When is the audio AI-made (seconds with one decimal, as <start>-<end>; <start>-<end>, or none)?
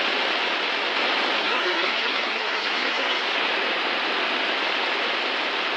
1.4-3.2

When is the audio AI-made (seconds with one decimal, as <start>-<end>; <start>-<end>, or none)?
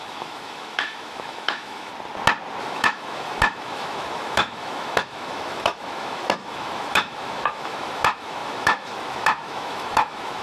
0.0-1.9; 2.6-10.4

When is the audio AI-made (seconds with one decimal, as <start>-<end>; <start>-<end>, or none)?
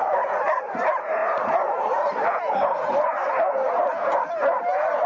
none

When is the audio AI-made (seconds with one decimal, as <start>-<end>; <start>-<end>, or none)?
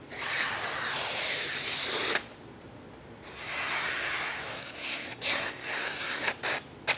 3.3-6.3